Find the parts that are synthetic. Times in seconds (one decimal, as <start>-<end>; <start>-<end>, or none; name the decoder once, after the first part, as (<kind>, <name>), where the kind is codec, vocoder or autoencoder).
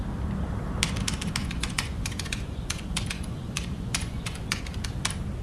1.4-4.6 (vocoder, Vocos)